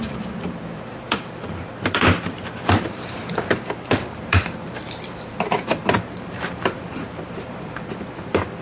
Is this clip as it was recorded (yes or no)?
no